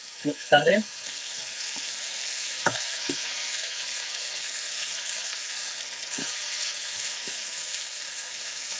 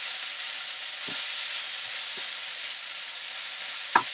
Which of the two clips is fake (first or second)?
first